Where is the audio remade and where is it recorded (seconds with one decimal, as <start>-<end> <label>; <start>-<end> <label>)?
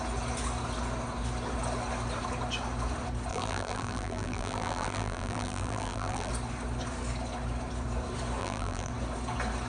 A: 0.0-3.3 recorded; 3.3-6.3 remade; 6.3-8.4 recorded; 8.4-8.9 remade; 8.9-9.7 recorded